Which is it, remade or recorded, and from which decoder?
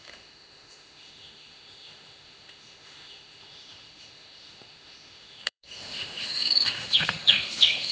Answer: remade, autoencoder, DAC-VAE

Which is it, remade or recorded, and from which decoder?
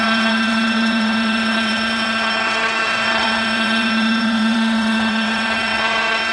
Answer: remade, vocoder, WaveNeXt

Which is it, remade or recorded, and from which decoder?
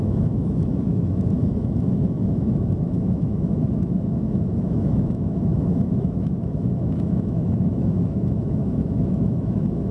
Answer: remade, autoencoder, DAC-VAE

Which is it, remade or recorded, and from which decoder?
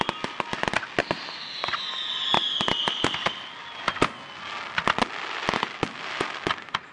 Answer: recorded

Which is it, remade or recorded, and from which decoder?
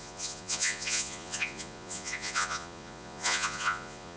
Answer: remade, vocoder, Vocos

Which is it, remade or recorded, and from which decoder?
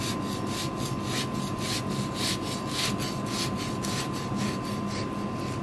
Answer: recorded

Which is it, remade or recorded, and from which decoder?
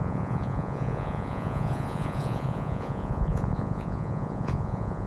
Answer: remade, vocoder, Vocos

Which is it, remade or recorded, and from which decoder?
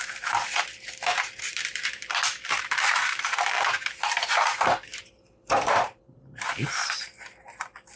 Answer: remade, vocoder, BigVGAN v2